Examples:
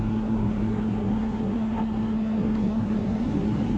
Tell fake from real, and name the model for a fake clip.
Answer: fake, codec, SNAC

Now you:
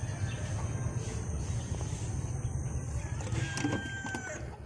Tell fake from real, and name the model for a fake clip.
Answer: real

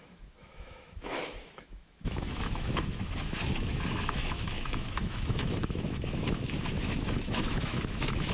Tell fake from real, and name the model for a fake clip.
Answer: fake, autoencoder, DAC-VAE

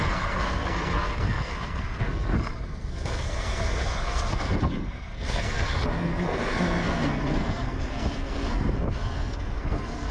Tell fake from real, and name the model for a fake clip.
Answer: fake, codec, SNAC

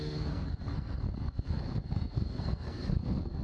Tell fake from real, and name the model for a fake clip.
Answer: fake, codec, SNAC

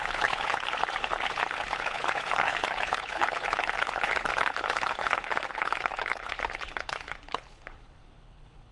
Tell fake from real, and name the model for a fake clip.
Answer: fake, codec, HILCodec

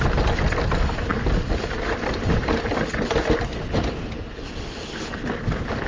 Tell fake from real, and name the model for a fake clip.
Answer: real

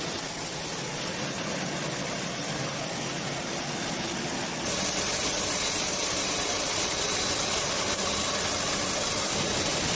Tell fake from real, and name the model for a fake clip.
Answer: real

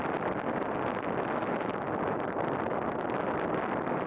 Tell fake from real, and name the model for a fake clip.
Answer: real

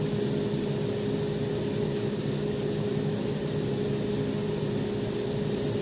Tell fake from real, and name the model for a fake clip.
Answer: real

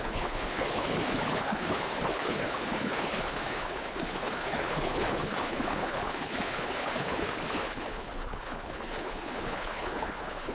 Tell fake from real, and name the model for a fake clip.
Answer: fake, codec, HILCodec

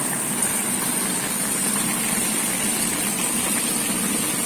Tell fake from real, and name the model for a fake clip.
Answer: real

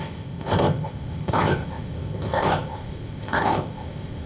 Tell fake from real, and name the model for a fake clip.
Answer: fake, codec, ZipCodec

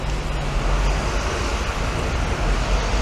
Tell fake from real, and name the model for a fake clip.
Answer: real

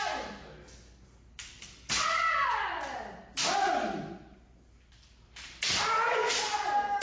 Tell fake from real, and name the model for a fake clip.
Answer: real